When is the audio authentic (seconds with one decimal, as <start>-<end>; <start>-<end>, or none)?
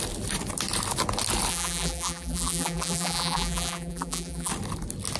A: 0.0-1.5; 4.5-5.2